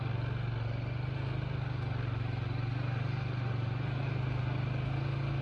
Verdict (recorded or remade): recorded